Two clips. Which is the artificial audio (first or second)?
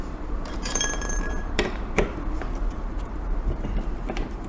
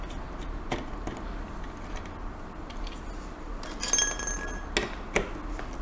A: first